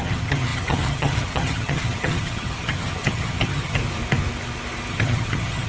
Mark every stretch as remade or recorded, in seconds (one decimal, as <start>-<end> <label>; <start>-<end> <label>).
0.0-3.8 remade; 3.8-4.9 recorded; 4.9-5.7 remade